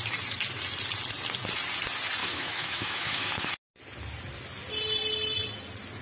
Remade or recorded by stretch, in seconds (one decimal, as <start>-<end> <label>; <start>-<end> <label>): 0.0-2.2 recorded; 2.2-3.5 remade; 3.5-6.0 recorded

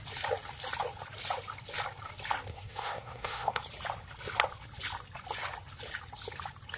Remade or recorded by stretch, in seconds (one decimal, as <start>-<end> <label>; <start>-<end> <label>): 0.0-2.5 recorded; 2.5-3.6 remade; 3.6-6.8 recorded